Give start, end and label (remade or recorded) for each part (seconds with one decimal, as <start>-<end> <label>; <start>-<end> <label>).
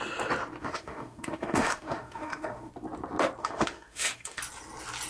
0.0-0.6 recorded; 0.6-2.7 remade; 2.7-3.4 recorded; 3.4-4.4 remade; 4.4-5.1 recorded